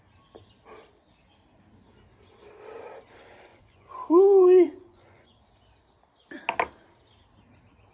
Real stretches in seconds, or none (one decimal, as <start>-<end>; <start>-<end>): 0.0-3.5; 5.4-7.9